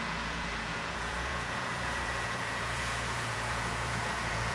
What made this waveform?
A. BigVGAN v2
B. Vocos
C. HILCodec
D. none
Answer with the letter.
B